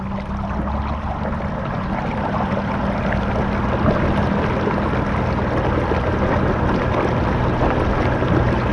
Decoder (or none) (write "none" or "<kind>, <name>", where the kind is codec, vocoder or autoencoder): none